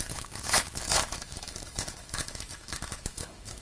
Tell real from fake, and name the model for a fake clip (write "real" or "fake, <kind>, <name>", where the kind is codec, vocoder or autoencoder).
fake, autoencoder, DAC-VAE